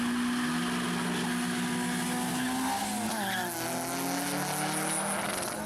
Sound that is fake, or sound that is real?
real